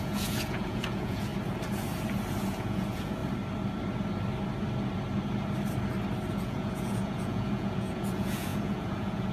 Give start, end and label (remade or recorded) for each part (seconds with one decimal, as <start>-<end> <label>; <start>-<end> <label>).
0.0-1.3 remade; 1.3-2.4 recorded; 2.4-3.2 remade; 3.2-6.3 recorded; 6.3-9.3 remade